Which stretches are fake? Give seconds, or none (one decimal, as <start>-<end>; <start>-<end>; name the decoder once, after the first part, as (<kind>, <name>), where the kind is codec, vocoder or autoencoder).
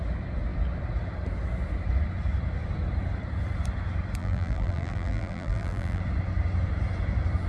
4.2-6.0 (vocoder, BigVGAN v2)